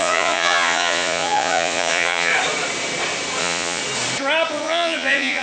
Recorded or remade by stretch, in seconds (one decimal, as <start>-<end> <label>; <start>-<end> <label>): 0.0-2.3 remade; 2.3-3.4 recorded; 3.4-3.8 remade; 3.8-4.5 recorded; 4.5-5.4 remade